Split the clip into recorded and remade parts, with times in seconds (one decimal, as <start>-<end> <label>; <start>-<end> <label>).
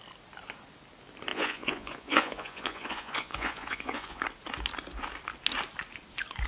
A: 0.0-1.3 recorded; 1.3-4.2 remade; 4.2-6.5 recorded